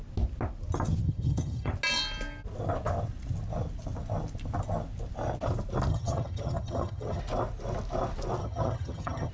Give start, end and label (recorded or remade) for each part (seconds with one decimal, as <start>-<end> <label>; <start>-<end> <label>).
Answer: 0.0-1.0 recorded; 1.0-1.7 remade; 1.7-5.9 recorded; 5.9-7.2 remade; 7.2-8.4 recorded; 8.4-9.3 remade